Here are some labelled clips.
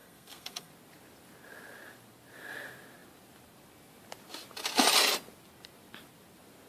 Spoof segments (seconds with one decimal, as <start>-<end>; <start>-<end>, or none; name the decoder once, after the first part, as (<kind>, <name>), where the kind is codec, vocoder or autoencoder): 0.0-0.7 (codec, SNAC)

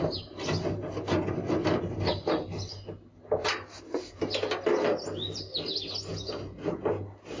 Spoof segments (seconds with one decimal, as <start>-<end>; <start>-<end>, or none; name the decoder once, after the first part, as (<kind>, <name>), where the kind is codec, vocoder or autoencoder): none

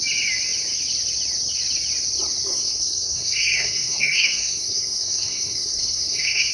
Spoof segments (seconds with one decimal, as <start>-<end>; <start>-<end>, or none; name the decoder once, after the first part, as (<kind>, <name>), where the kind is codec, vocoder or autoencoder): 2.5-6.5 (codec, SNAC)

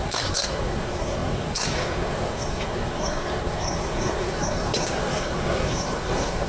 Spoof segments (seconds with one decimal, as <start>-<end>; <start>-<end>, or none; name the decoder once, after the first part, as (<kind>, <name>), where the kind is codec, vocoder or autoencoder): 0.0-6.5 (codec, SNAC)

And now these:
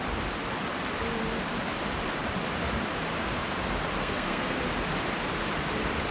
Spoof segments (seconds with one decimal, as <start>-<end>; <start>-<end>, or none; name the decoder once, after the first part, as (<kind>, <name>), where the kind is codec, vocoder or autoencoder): 4.0-4.6 (codec, SNAC)

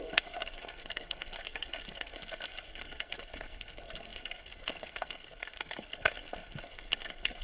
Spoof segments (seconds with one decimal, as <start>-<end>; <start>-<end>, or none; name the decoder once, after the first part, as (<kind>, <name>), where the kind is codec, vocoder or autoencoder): 0.0-7.4 (codec, SNAC)

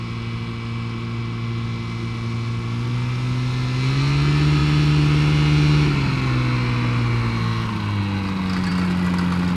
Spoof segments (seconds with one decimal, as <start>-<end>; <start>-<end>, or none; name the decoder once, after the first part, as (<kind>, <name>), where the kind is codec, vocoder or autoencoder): none